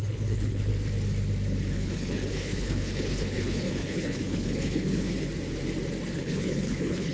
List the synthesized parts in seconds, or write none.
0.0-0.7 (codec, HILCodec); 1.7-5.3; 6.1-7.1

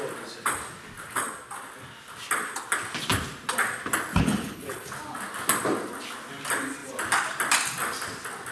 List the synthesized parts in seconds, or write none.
4.1-4.9 (codec, HILCodec)

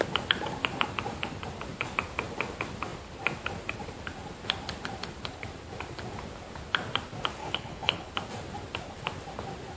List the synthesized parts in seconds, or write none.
7.4-8.1 (codec, HILCodec)

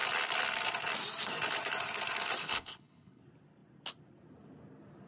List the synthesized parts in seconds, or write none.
2.4-3.2 (codec, HILCodec)

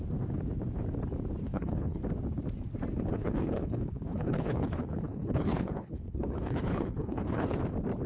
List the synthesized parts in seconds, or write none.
1.4-2.0 (codec, HILCodec); 3.1-7.6